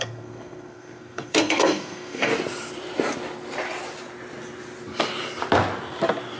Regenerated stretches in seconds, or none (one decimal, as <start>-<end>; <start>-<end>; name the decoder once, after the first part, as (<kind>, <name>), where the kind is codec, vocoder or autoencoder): 0.0-2.3 (codec, SNAC)